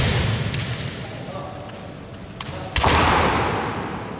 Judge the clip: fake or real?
real